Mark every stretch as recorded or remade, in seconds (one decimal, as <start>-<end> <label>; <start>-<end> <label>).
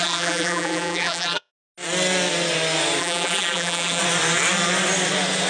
0.0-1.5 remade; 1.5-3.0 recorded; 3.0-4.0 remade; 4.0-5.5 recorded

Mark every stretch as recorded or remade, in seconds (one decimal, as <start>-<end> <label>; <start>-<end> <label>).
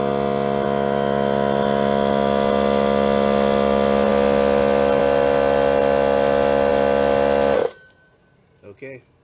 0.0-9.2 recorded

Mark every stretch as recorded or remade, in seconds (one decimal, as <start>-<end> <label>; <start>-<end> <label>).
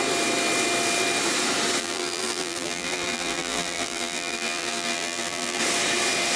0.0-1.8 recorded; 1.8-5.6 remade; 5.6-6.4 recorded